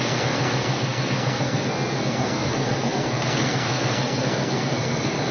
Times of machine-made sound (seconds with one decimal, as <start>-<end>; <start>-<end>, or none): 0.0-5.3